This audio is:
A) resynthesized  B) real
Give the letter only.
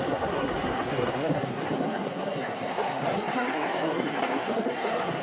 A